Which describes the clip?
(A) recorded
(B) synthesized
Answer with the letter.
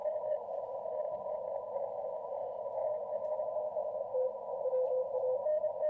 A